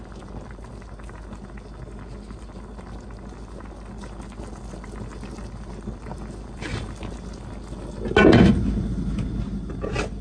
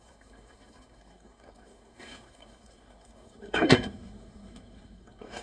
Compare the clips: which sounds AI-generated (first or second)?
second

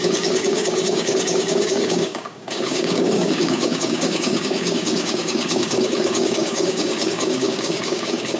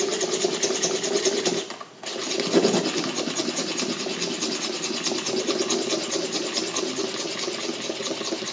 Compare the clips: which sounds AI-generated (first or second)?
first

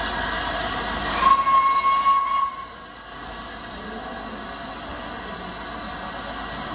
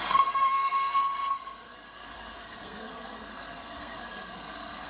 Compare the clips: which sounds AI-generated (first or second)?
second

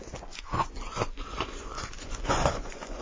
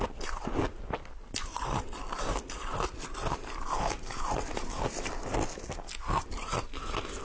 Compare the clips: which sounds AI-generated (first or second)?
first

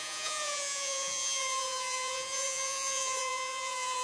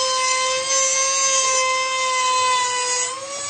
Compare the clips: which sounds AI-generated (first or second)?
first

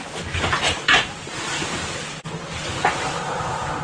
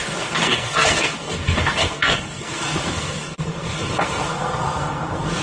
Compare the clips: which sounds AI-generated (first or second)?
second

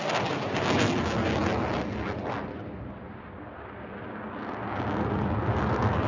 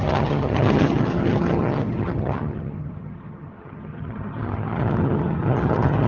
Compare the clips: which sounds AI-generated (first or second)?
second